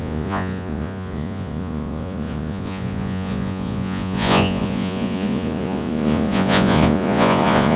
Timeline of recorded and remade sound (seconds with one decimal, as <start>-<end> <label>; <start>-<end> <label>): 0.0-7.8 remade